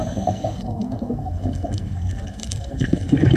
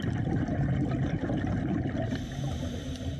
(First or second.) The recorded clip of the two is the second